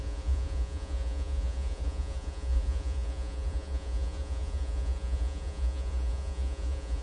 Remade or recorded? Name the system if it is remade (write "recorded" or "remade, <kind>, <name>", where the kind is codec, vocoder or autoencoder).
remade, vocoder, Vocos